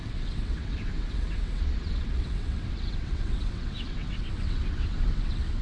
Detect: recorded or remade remade